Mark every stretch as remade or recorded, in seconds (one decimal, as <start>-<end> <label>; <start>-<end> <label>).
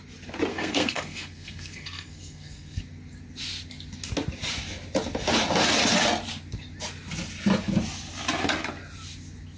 0.0-0.5 recorded; 0.5-2.8 remade; 2.8-9.6 recorded